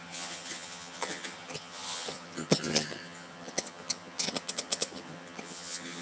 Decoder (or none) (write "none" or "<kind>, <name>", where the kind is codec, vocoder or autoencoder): vocoder, HiFi-GAN